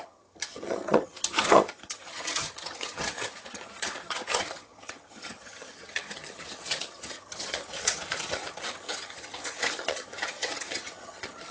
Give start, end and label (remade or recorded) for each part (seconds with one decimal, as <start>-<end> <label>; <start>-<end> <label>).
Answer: 0.0-11.5 remade